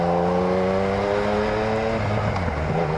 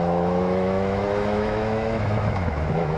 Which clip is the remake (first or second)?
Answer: second